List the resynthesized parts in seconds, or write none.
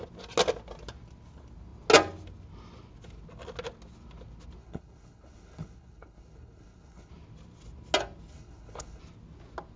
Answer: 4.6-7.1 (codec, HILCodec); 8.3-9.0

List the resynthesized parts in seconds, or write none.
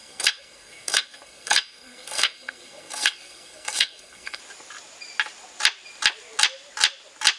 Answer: 0.0-4.4 (codec, SNAC)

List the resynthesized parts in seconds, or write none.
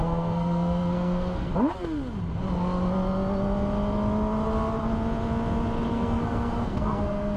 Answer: 0.0-1.5 (codec, SNAC); 5.9-7.4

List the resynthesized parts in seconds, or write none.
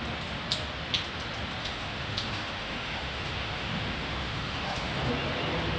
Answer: 1.6-5.1 (autoencoder, DAC-VAE)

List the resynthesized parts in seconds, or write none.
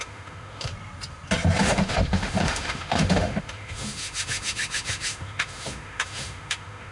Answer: 0.0-0.7 (autoencoder, DAC-VAE); 1.6-6.9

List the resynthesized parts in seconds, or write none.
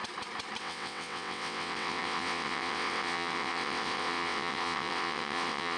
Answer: 0.6-5.8 (vocoder, WaveNeXt)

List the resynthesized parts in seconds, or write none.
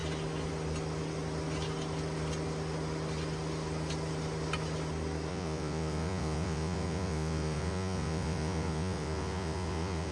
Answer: 5.3-10.1 (vocoder, Vocos)